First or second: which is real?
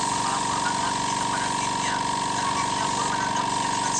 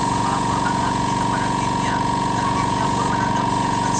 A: first